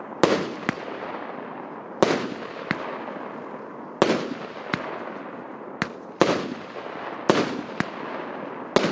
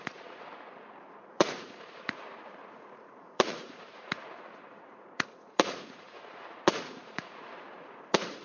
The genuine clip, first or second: first